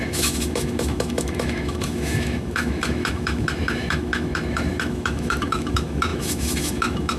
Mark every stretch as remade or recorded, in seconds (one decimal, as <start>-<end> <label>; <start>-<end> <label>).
0.0-7.2 remade